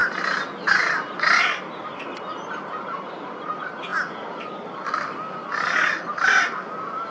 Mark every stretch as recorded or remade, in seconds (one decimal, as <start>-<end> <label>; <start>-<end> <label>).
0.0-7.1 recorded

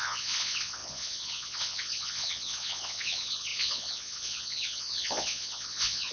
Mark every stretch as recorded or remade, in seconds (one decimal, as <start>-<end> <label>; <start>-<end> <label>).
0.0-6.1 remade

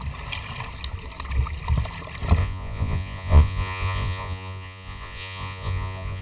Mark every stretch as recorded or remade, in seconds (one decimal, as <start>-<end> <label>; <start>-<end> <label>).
0.0-2.4 recorded; 2.4-6.2 remade

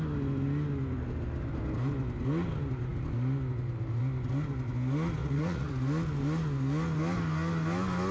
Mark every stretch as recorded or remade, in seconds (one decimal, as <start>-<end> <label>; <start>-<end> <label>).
0.0-5.2 recorded; 5.2-5.7 remade; 5.7-8.1 recorded

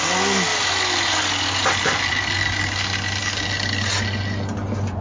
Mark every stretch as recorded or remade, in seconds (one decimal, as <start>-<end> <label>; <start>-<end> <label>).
0.0-5.0 recorded